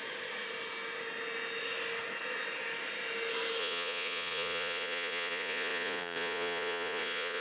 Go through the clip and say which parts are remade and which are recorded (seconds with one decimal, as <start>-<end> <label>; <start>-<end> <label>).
0.0-3.6 recorded; 3.6-7.4 remade